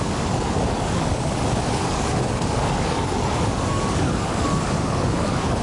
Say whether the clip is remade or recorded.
remade